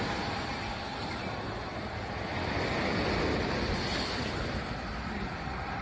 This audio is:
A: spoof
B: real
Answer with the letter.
B